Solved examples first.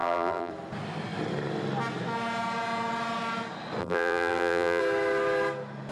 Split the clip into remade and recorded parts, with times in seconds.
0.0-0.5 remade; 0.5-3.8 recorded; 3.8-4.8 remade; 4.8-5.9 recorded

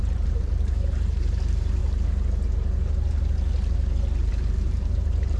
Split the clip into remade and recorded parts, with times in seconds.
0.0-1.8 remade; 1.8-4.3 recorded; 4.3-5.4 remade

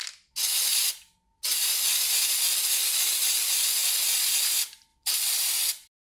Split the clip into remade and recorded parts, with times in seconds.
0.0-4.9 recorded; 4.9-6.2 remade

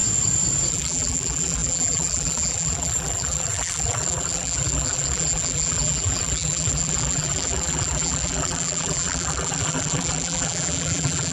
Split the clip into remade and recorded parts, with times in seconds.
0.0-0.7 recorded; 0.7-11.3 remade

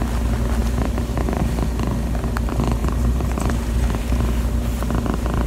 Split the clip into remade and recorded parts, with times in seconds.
0.0-0.6 recorded; 0.6-1.4 remade; 1.4-2.8 recorded; 2.8-4.2 remade; 4.2-5.5 recorded